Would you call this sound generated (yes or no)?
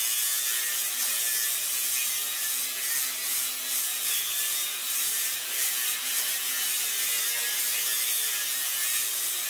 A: no